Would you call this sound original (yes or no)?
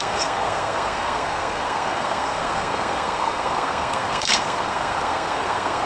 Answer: no